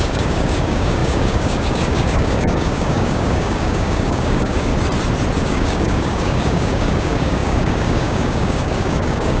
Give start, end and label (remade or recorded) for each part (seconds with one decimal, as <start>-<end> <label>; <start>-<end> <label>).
0.0-4.7 remade; 4.7-5.4 recorded; 5.4-9.4 remade